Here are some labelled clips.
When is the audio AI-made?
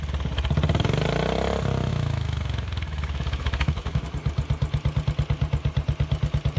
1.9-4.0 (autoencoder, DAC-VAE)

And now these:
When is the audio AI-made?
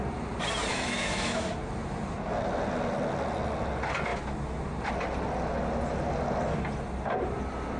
0.7-1.5 (autoencoder, DAC-VAE)